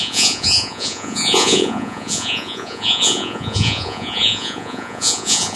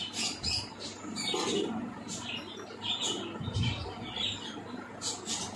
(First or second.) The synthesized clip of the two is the first